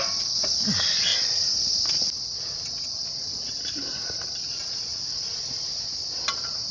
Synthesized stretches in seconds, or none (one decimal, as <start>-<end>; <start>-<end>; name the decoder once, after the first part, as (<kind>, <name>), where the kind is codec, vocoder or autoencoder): none